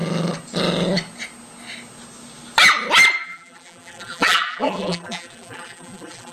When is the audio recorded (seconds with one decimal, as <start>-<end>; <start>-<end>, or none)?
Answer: 0.0-3.2